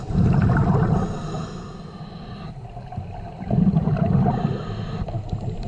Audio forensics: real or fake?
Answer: real